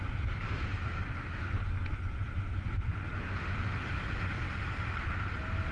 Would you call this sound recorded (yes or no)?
yes